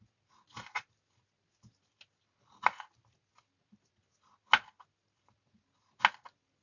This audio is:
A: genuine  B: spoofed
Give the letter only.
A